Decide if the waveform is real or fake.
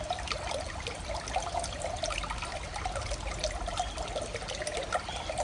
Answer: real